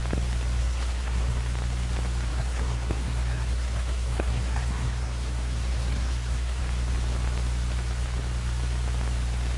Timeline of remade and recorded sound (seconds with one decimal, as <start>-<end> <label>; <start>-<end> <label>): 0.0-0.6 recorded; 0.6-1.4 remade; 1.4-2.3 recorded; 2.3-6.6 remade; 6.6-9.6 recorded